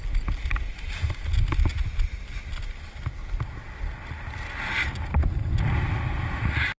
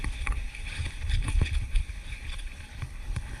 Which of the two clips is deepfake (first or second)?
second